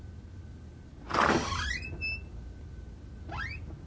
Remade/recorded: recorded